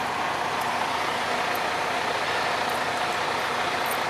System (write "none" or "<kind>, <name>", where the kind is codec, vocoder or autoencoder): none